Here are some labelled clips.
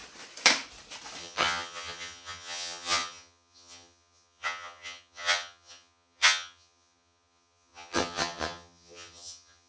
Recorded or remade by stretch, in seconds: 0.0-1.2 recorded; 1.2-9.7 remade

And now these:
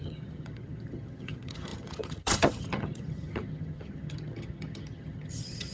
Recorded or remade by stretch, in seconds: 0.0-5.7 remade

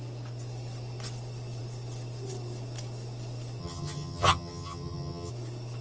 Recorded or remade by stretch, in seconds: 0.0-3.6 recorded; 3.6-5.3 remade; 5.3-5.8 recorded

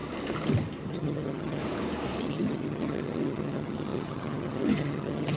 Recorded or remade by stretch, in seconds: 0.0-0.9 recorded; 0.9-1.6 remade; 1.6-2.2 recorded; 2.2-5.4 remade

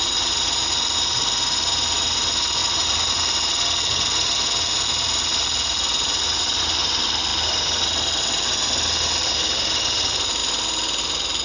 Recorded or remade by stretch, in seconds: 0.0-11.4 recorded

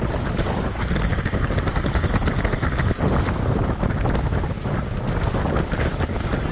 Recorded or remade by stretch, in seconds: 0.0-6.5 recorded